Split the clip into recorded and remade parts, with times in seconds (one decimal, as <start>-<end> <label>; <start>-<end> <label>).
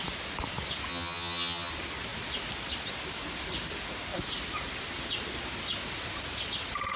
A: 0.0-0.9 recorded; 0.9-1.7 remade; 1.7-7.0 recorded